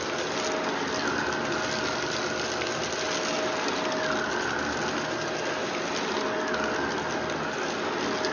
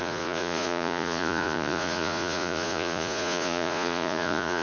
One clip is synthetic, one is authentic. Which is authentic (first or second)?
first